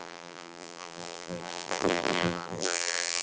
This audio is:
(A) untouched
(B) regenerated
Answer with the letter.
B